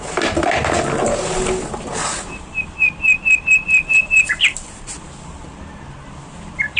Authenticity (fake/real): real